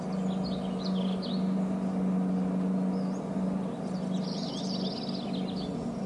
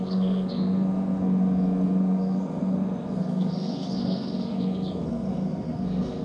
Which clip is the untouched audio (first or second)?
first